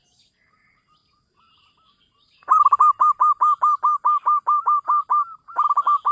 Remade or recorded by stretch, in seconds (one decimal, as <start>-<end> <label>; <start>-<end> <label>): 0.0-6.1 recorded